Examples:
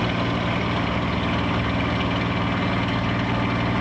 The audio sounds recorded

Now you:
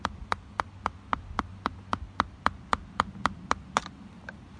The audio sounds recorded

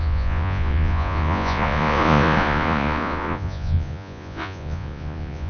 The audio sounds remade